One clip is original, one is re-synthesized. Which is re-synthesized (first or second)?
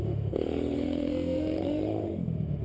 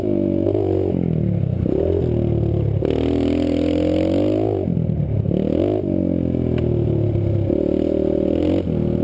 first